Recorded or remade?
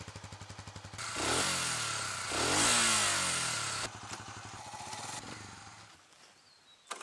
recorded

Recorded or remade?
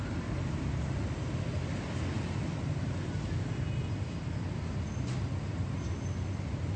recorded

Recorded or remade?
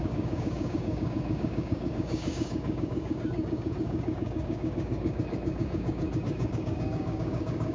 remade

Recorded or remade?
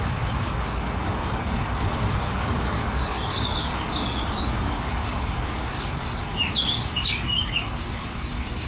remade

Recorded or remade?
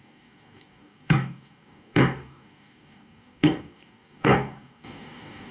remade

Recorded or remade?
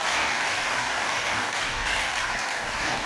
remade